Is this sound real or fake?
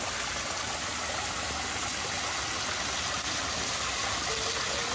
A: real